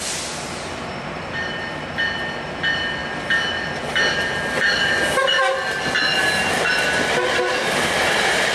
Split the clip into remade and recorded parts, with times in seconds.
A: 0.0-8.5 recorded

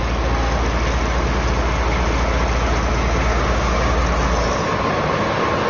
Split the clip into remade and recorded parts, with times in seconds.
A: 0.0-3.3 recorded; 3.3-4.0 remade; 4.0-5.7 recorded

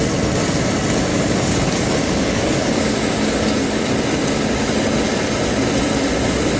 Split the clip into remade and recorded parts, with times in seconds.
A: 0.0-1.1 recorded; 1.1-3.9 remade; 3.9-6.6 recorded

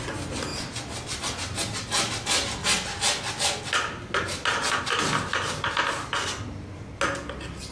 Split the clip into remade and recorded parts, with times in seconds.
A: 0.0-7.7 recorded

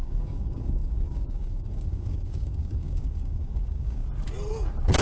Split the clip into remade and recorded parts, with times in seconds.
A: 0.0-4.0 remade; 4.0-5.0 recorded

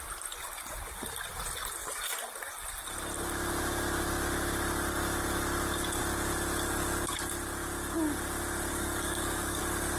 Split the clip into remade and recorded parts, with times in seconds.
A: 0.0-8.7 recorded; 8.7-9.6 remade; 9.6-10.0 recorded